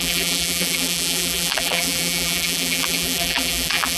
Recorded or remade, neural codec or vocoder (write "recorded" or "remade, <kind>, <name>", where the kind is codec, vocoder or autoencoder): remade, vocoder, BigVGAN v2